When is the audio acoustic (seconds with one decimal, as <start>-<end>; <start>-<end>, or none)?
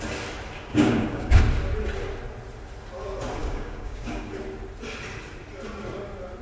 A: 0.0-0.7; 1.4-3.4; 4.3-6.4